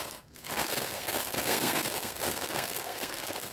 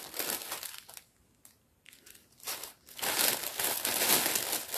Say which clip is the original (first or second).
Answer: second